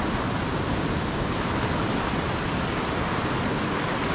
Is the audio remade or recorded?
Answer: recorded